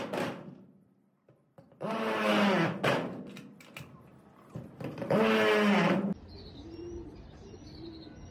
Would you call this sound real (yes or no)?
yes